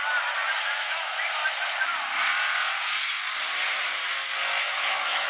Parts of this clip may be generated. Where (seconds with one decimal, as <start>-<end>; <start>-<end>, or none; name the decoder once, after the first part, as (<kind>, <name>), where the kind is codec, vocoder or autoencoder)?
0.6-1.4 (autoencoder, DAC-VAE); 4.6-5.3